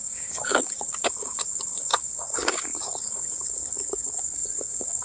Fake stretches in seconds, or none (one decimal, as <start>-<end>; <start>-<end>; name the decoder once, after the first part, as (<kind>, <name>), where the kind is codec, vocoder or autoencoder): 0.0-5.0 (codec, DAC)